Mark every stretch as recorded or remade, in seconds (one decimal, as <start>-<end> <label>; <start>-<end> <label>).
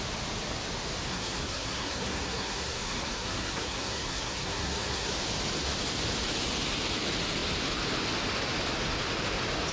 0.0-1.1 recorded; 1.1-5.1 remade; 5.1-9.7 recorded